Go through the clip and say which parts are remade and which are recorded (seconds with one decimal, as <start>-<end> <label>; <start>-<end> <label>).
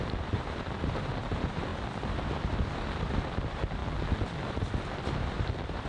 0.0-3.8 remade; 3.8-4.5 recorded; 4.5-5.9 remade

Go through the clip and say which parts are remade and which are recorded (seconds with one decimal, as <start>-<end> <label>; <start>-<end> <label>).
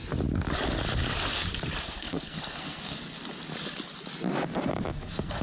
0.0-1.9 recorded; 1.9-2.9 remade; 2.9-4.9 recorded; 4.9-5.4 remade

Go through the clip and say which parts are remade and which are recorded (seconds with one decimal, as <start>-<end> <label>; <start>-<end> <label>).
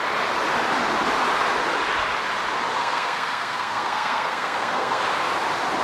0.0-2.8 recorded; 2.8-5.0 remade; 5.0-5.8 recorded